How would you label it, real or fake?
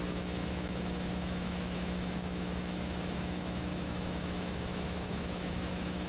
fake